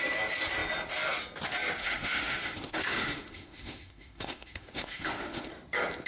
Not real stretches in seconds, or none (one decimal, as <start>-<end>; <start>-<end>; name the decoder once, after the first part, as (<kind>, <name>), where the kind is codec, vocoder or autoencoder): 1.8-5.5 (autoencoder, DAC-VAE)